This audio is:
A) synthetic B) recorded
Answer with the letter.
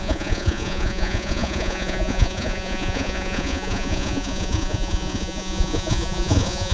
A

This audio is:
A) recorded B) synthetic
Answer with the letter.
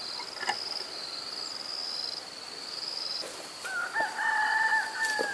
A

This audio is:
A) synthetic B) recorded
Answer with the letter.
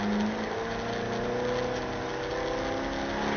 B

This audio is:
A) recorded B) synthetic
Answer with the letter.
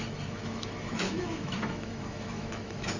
B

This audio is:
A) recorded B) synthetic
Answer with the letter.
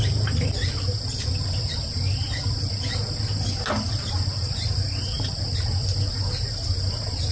A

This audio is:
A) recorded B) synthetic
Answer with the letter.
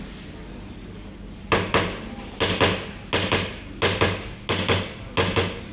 A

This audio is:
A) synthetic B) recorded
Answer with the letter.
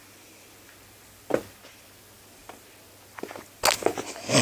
B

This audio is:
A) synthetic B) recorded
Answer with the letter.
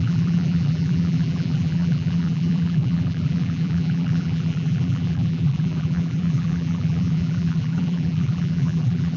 A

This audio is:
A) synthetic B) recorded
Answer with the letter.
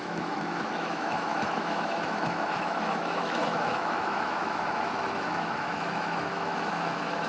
A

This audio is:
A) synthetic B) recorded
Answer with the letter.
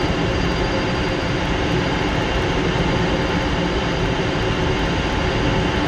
B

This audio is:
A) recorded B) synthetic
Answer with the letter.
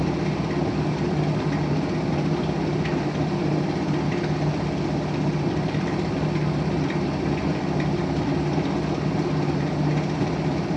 A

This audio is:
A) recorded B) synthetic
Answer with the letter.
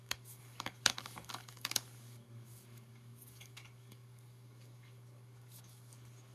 B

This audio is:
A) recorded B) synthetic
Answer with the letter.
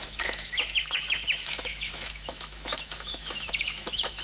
B